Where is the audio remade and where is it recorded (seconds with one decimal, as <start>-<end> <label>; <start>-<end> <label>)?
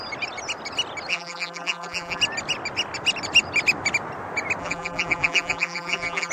0.0-1.1 recorded; 1.1-2.2 remade; 2.2-4.6 recorded; 4.6-6.3 remade